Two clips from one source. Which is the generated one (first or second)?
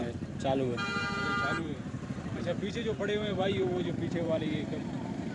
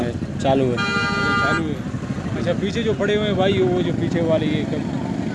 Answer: first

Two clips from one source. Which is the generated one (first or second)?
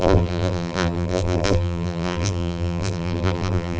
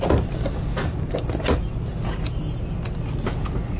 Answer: first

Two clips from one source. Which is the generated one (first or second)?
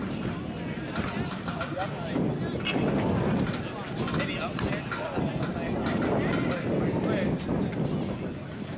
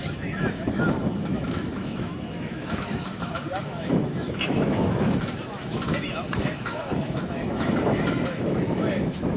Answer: second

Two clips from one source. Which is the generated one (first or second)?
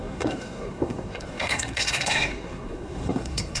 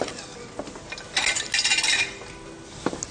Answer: first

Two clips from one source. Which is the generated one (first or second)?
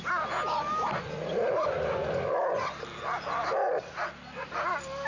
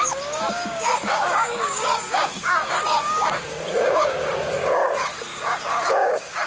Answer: second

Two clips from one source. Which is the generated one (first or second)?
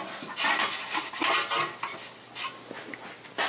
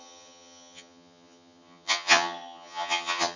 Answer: second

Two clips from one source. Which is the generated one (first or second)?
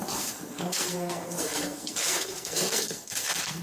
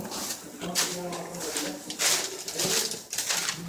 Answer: first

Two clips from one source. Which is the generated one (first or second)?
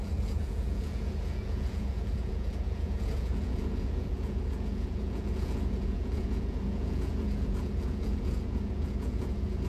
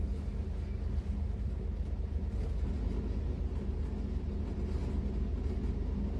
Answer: first